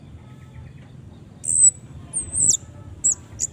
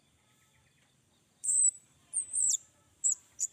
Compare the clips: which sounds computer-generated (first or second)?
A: second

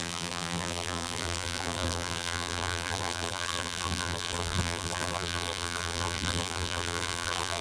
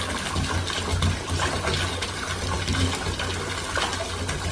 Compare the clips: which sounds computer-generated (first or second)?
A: first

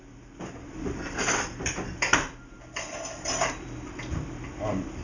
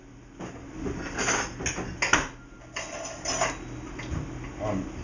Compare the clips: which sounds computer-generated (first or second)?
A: first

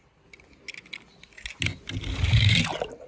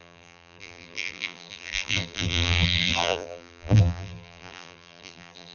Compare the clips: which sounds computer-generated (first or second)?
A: second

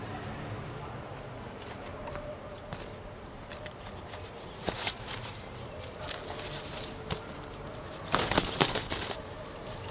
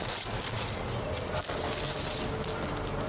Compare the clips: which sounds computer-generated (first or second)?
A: first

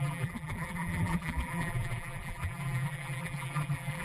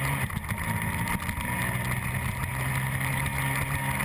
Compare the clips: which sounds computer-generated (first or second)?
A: first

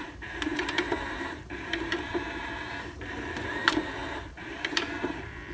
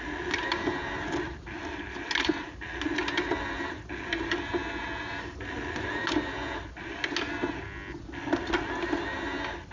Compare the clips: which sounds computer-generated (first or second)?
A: first